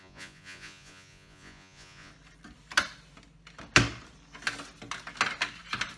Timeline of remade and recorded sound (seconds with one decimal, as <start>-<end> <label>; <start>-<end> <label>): 0.0-2.1 remade; 2.1-6.0 recorded